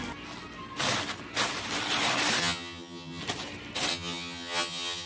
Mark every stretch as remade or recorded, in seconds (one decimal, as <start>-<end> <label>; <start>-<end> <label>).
0.0-2.4 recorded; 2.4-3.2 remade; 3.2-3.9 recorded; 3.9-5.1 remade